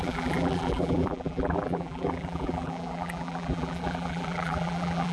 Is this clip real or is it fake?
fake